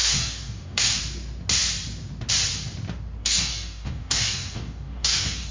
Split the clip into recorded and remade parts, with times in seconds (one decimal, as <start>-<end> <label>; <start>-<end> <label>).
0.0-1.0 remade; 1.0-3.2 recorded; 3.2-5.5 remade

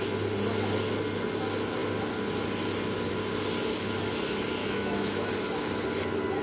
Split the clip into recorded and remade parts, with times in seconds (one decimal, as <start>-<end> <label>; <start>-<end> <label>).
0.0-4.6 recorded; 4.6-5.3 remade; 5.3-6.4 recorded

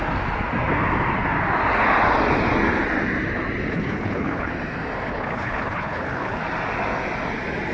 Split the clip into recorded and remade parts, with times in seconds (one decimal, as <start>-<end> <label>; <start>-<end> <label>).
0.0-3.7 recorded; 3.7-4.5 remade; 4.5-5.1 recorded; 5.1-6.4 remade; 6.4-7.7 recorded

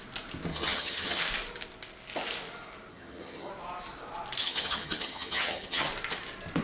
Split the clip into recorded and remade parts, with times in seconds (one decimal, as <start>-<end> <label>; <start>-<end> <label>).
0.0-0.5 recorded; 0.5-1.2 remade; 1.2-2.9 recorded; 2.9-3.5 remade; 3.5-4.4 recorded; 4.4-5.9 remade; 5.9-6.6 recorded

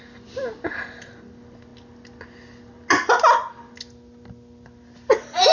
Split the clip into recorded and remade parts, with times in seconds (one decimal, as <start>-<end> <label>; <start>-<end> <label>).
0.0-5.5 recorded